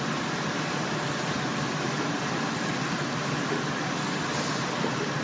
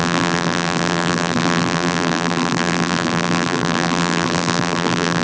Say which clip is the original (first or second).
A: first